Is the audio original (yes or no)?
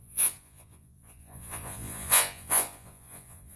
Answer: no